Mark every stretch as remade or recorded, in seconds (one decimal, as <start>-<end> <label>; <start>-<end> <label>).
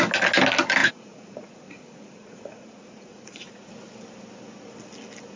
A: 0.0-0.8 recorded; 0.8-3.7 remade; 3.7-5.4 recorded